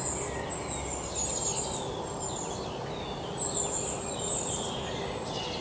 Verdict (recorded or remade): recorded